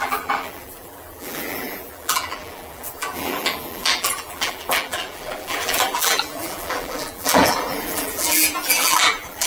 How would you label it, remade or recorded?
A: remade